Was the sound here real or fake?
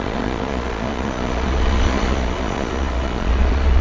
fake